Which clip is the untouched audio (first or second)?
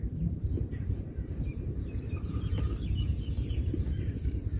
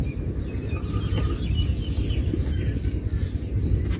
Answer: second